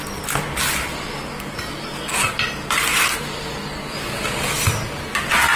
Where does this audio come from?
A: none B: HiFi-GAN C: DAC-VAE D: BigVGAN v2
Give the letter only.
A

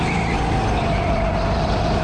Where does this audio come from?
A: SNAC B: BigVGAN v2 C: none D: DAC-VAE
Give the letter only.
B